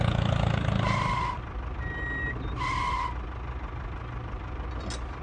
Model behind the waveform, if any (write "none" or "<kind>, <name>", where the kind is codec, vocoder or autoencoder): none